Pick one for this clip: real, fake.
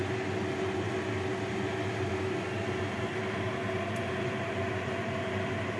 real